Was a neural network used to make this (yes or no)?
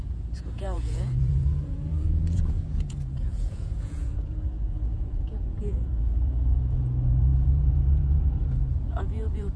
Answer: yes